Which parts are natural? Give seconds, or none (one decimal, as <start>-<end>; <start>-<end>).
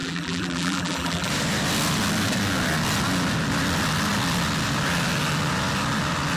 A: 1.3-6.4